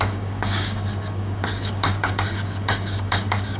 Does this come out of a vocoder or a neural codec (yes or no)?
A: yes